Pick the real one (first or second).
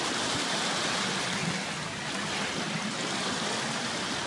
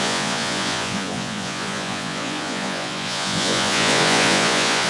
first